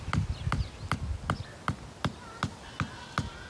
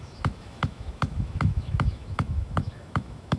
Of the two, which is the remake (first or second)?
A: second